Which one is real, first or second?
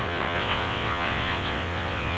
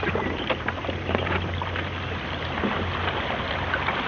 second